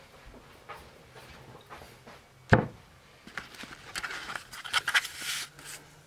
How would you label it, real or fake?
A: real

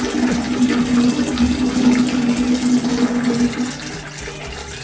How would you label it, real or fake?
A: real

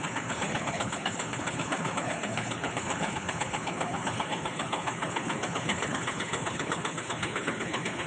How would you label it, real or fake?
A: fake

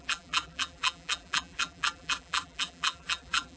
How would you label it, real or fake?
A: fake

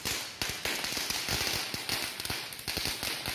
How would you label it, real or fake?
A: real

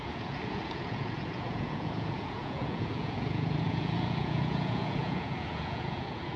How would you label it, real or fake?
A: fake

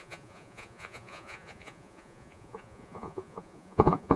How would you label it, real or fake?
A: fake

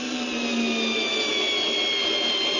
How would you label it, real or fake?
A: real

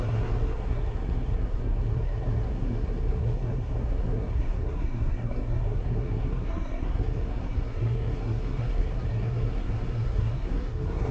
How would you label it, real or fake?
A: fake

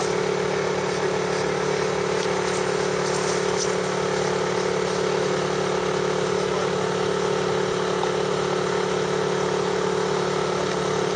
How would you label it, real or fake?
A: real